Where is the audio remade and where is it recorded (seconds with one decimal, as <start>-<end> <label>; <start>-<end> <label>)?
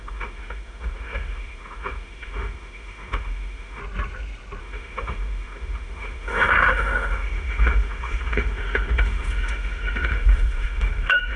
0.0-3.8 remade; 3.8-4.6 recorded; 4.6-11.4 remade